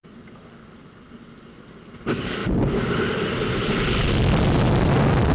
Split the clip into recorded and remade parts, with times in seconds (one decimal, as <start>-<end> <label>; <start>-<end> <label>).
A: 0.0-5.3 recorded